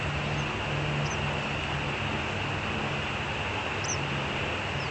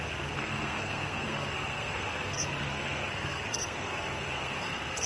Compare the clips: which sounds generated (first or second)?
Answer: second